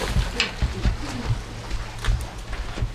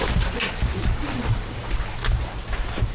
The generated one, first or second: second